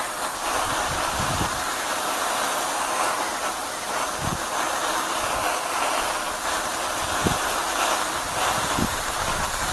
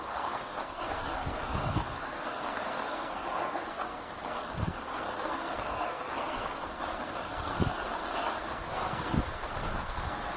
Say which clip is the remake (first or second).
second